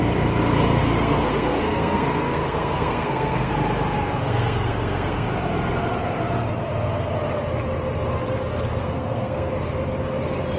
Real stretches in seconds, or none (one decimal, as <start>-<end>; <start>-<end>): 0.0-0.8; 3.5-4.2; 5.3-8.8; 9.5-10.6